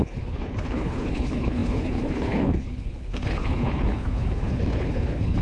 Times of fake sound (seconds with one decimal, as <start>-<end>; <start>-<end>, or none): 0.0-5.4